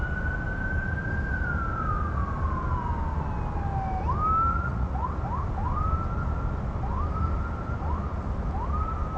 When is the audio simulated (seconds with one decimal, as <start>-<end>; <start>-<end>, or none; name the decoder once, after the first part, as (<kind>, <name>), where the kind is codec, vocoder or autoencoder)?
4.5-5.1 (vocoder, Vocos)